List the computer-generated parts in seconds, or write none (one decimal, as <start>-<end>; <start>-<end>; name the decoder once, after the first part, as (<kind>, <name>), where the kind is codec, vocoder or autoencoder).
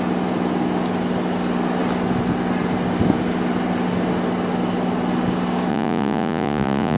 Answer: 5.7-7.0 (vocoder, Vocos)